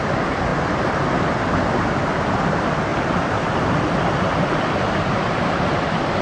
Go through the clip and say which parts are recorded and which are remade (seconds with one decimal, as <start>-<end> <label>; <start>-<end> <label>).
0.0-0.5 remade; 0.5-2.2 recorded; 2.2-6.2 remade